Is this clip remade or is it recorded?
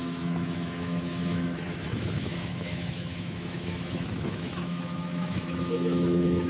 remade